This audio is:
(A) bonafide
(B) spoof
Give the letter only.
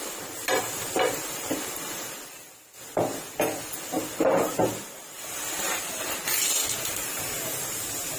A